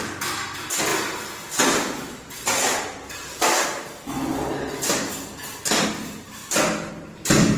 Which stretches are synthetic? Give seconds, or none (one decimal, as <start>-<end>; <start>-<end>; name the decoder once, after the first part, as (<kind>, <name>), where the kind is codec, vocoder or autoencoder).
0.0-0.9 (vocoder, BigVGAN v2); 2.6-7.6